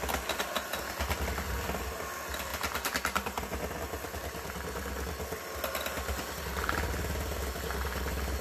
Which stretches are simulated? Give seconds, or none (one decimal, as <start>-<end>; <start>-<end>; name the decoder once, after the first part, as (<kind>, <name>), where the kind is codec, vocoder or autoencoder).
none